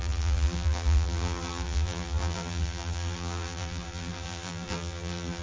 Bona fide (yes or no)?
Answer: no